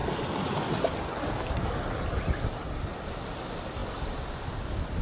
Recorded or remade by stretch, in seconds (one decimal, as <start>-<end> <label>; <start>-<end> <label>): 0.0-5.0 recorded